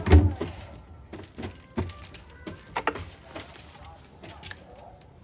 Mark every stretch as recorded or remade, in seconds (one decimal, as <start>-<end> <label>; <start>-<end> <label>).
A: 0.0-5.2 recorded